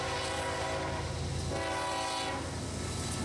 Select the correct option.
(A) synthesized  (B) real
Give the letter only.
B